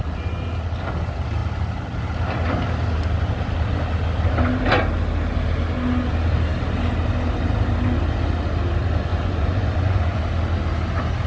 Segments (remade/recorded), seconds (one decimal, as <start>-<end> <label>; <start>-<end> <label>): 0.0-9.1 recorded; 9.1-10.2 remade; 10.2-11.3 recorded